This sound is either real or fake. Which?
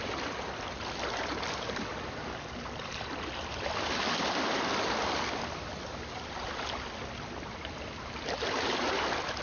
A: real